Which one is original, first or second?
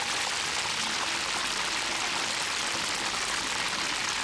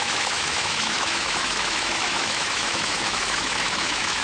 first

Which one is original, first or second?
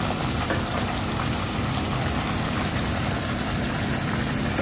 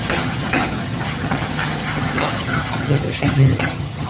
first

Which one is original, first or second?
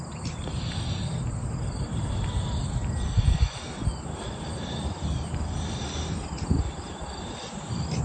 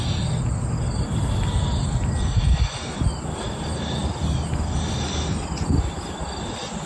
second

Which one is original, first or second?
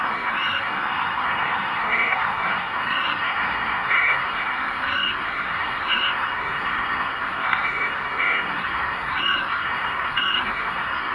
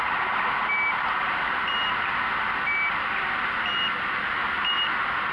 second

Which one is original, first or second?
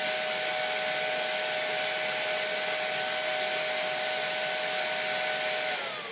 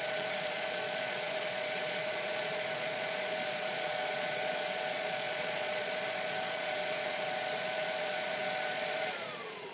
first